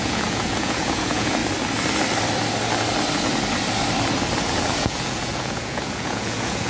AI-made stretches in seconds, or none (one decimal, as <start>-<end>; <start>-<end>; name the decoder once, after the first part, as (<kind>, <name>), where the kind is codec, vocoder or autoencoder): 0.0-1.4 (vocoder, Vocos); 4.8-6.7

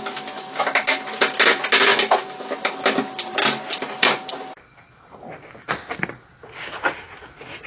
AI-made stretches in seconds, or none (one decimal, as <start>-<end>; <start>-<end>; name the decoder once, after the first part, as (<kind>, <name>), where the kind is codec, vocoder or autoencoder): none

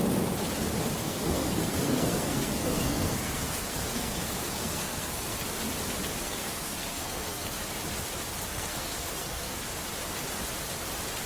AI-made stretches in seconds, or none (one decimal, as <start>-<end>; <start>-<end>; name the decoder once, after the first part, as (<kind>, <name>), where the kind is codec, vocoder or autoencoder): 1.0-5.4 (codec, SNAC); 6.2-7.6; 8.5-9.6

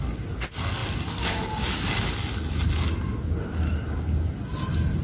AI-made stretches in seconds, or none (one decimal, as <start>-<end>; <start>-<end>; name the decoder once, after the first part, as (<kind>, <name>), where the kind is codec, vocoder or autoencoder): none

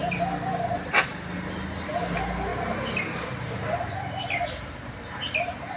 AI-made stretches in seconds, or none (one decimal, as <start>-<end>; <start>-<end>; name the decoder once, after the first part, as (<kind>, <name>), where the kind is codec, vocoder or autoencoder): none